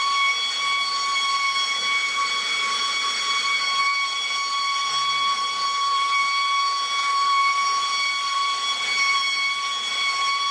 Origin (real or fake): fake